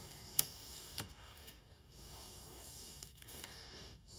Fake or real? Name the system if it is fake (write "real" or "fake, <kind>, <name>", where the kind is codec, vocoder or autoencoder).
fake, codec, DAC